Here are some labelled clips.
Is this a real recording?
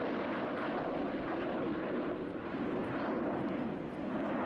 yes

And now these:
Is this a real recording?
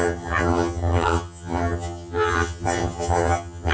no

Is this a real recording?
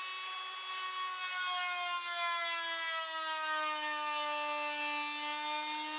yes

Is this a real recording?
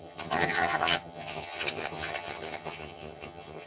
no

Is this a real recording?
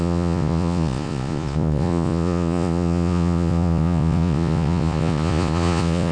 no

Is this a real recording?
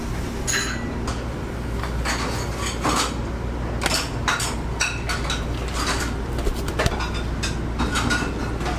yes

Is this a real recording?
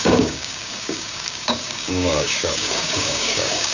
no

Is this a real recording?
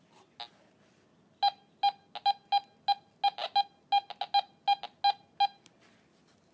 yes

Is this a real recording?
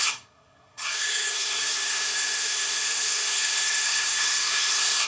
no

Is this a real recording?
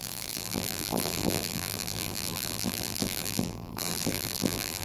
no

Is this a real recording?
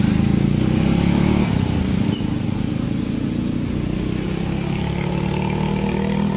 yes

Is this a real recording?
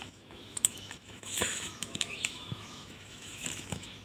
no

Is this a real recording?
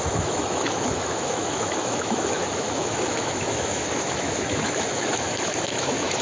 no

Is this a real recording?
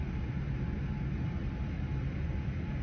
yes